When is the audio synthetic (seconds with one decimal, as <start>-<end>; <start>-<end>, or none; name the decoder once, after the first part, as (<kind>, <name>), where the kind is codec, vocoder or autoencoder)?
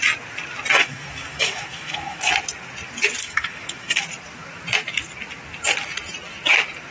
0.7-2.3 (autoencoder, DAC-VAE); 3.2-4.0